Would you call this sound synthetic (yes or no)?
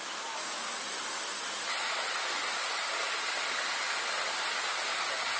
no